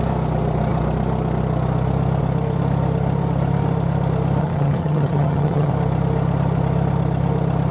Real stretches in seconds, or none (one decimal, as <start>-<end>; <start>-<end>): 0.0-4.4; 5.7-7.7